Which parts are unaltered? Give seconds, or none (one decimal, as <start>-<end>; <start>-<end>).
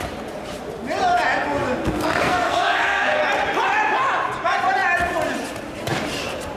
0.0-1.8; 3.2-6.6